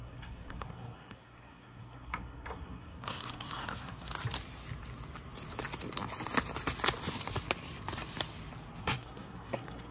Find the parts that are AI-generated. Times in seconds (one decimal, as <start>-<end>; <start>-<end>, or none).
0.0-4.1; 8.8-9.9